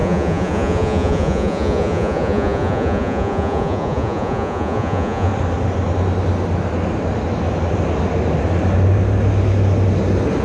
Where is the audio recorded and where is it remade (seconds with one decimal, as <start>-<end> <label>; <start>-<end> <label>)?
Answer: 0.0-5.3 remade; 5.3-10.4 recorded